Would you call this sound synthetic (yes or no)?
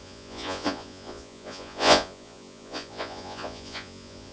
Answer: yes